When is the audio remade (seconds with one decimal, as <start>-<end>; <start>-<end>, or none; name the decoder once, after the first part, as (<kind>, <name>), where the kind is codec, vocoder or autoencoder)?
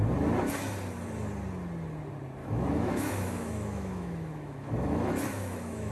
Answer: 2.4-5.9 (autoencoder, DAC-VAE)